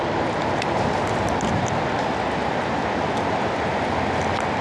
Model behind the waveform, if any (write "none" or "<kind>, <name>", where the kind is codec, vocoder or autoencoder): none